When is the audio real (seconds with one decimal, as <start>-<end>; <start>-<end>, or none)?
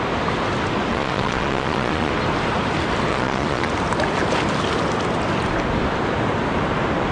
0.0-0.9; 2.1-3.1; 3.7-7.1